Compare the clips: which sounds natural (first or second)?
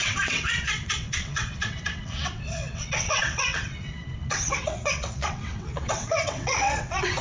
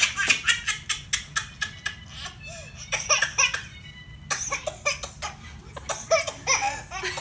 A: second